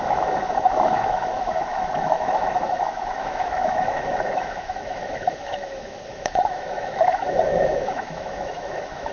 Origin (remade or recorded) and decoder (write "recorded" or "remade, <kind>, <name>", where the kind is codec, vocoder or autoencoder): remade, autoencoder, DAC-VAE